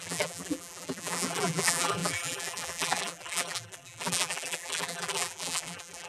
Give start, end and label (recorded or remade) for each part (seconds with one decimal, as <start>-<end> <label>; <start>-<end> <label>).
0.0-6.1 remade